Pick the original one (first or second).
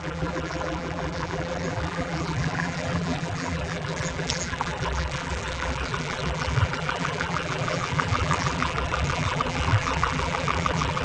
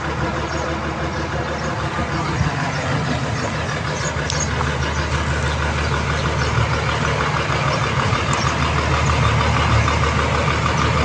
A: second